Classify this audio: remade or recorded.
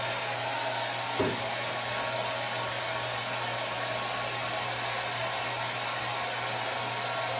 recorded